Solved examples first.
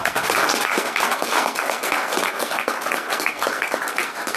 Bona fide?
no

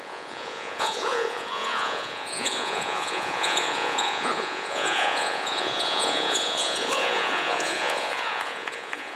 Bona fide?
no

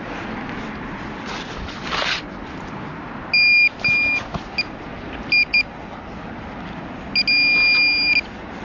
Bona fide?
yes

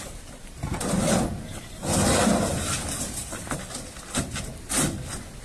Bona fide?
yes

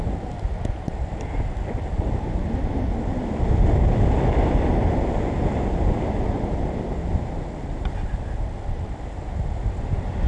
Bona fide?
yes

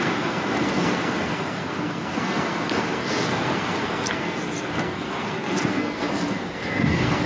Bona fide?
no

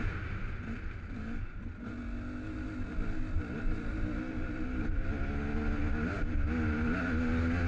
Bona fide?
yes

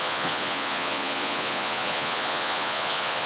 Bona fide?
no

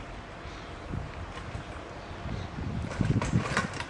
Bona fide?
yes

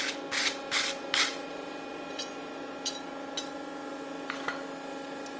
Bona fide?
yes